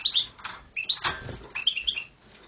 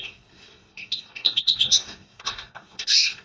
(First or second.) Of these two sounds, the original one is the first